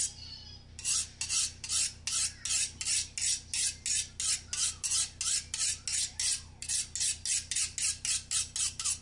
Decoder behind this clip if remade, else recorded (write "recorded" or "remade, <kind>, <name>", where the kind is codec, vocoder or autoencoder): recorded